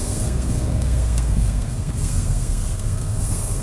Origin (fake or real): fake